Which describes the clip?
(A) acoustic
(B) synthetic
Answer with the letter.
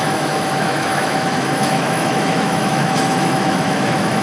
B